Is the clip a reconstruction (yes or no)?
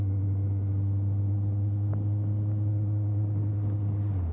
no